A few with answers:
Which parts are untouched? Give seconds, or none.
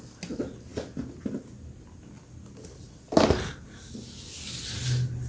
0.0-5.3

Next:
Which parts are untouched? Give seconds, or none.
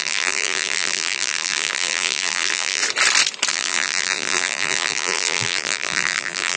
2.8-3.5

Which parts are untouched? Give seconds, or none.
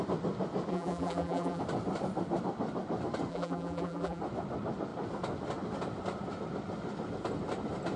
0.0-0.7; 1.6-3.3; 4.2-8.0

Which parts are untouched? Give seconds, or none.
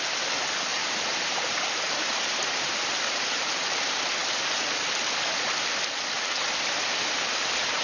0.0-0.7; 3.5-7.3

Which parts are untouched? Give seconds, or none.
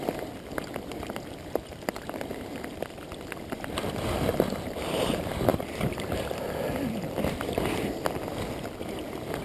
0.0-9.4